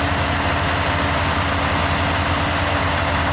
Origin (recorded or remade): recorded